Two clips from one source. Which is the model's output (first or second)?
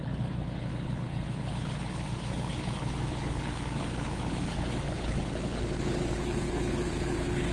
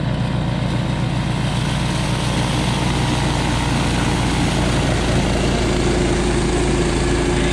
first